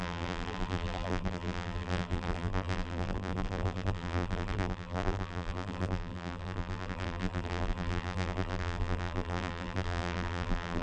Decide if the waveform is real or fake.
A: fake